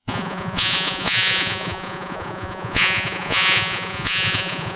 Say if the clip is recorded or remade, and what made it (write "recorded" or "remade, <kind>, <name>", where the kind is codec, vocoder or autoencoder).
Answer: remade, vocoder, Vocos